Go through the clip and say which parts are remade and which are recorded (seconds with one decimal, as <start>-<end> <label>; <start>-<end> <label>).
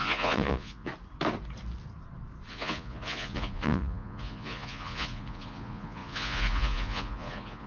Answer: 0.0-0.9 remade; 0.9-2.5 recorded; 2.5-7.7 remade